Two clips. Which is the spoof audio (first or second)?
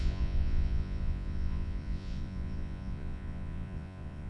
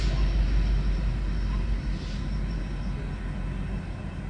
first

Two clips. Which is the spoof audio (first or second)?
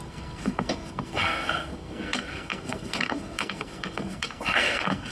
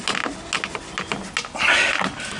first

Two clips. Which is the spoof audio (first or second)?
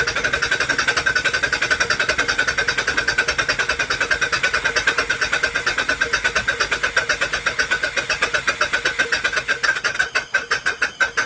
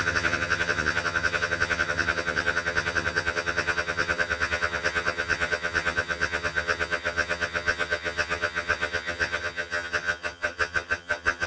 second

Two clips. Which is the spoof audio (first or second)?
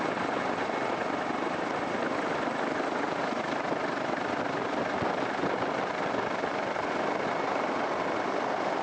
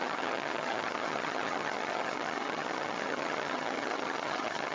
second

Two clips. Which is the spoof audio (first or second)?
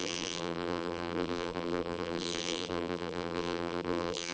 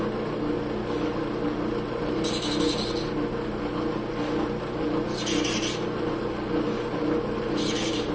first